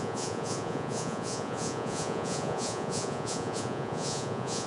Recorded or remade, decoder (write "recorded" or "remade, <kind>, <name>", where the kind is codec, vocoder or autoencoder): remade, vocoder, Vocos